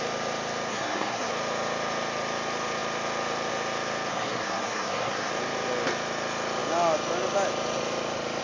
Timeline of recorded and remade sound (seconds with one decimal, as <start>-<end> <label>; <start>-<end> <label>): 0.0-0.7 recorded; 0.7-1.3 remade; 1.3-4.1 recorded; 4.1-5.3 remade; 5.3-8.4 recorded